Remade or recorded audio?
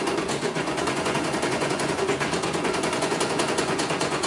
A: remade